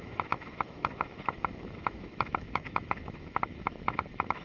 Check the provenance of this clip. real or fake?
fake